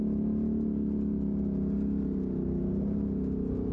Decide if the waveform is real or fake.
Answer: real